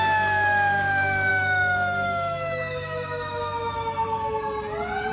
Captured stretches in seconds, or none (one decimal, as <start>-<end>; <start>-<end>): 0.0-1.3; 4.4-5.1